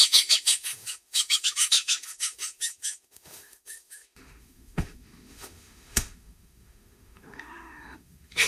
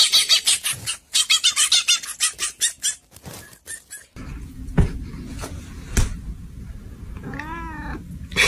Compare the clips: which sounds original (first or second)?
second